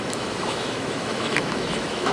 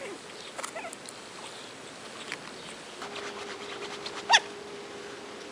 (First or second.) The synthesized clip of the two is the first